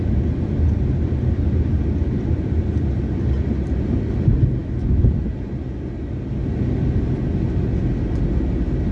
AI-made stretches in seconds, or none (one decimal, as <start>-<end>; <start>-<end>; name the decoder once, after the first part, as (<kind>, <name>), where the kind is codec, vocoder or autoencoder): 4.6-5.2 (autoencoder, DAC-VAE)